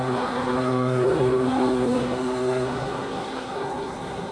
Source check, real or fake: fake